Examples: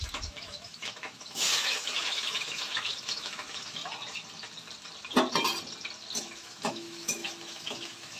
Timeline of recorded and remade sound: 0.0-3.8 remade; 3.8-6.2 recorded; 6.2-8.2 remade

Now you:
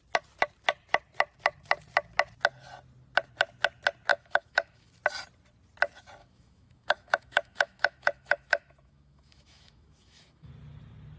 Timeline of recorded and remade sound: 0.0-4.1 recorded; 4.1-4.9 remade; 4.9-6.2 recorded; 6.2-10.5 remade; 10.5-11.2 recorded

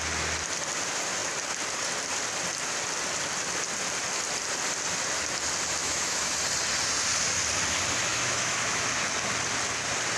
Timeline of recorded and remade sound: 0.0-5.8 recorded; 5.8-6.3 remade; 6.3-8.1 recorded; 8.1-8.9 remade; 8.9-10.2 recorded

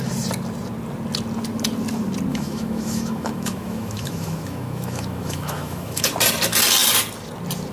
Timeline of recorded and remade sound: 0.0-2.3 recorded; 2.3-6.1 remade; 6.1-7.7 recorded

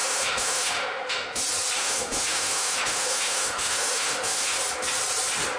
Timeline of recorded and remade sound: 0.0-1.4 remade; 1.4-1.8 recorded; 1.8-4.6 remade; 4.6-5.6 recorded

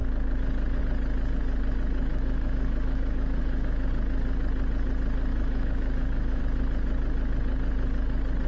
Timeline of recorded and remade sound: 0.0-2.1 recorded; 2.1-3.9 remade; 3.9-5.3 recorded; 5.3-6.4 remade; 6.4-8.5 recorded